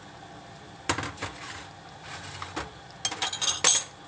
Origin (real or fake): real